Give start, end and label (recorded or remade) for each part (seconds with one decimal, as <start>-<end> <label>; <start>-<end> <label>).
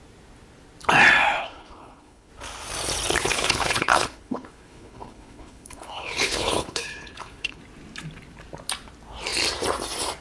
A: 0.0-1.4 recorded; 1.4-2.3 remade; 2.3-3.2 recorded; 3.2-7.6 remade; 7.6-10.2 recorded